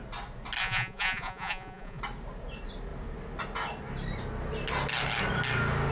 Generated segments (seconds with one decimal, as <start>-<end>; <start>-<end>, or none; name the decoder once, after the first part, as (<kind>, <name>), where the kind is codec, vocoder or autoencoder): 0.6-2.0 (vocoder, Vocos)

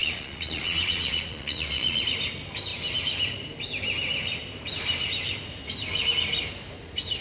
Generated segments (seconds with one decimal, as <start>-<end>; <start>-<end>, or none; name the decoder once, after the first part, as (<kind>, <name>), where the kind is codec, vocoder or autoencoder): 0.0-2.0 (vocoder, Vocos)